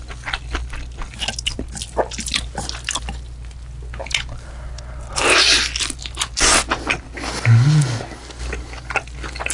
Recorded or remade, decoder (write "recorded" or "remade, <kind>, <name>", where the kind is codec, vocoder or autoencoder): recorded